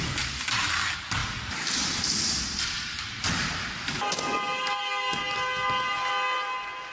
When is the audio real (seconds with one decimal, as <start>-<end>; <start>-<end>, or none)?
0.0-6.9

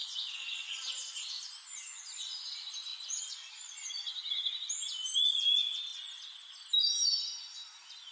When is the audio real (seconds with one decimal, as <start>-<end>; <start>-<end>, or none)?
0.0-8.1